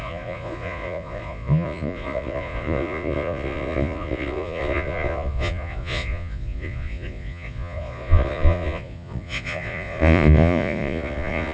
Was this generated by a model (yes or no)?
yes